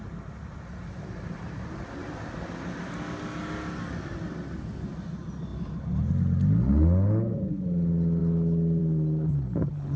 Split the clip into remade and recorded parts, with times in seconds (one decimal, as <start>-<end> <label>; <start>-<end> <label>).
0.0-10.0 recorded